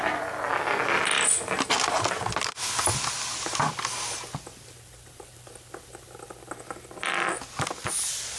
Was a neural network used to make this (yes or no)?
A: no